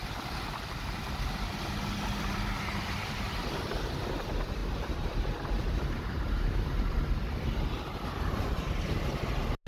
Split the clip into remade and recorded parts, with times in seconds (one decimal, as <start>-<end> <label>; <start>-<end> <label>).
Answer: 0.0-4.6 recorded; 4.6-7.0 remade; 7.0-9.7 recorded